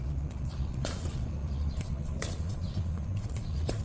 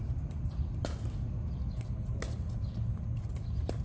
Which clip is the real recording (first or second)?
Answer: second